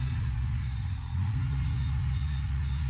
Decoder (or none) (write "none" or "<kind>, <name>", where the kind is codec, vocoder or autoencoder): vocoder, Vocos